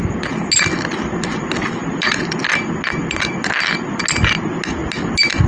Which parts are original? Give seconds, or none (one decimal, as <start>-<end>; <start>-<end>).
0.0-1.8; 2.4-5.5